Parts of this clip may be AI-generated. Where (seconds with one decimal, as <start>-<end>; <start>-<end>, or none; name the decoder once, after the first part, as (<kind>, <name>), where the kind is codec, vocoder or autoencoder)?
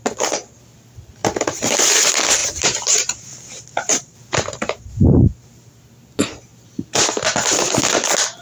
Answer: 1.2-1.9 (vocoder, BigVGAN v2); 2.4-5.7